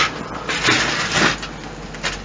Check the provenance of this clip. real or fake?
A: real